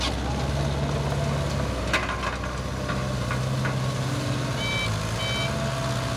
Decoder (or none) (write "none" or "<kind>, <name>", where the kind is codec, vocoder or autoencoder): none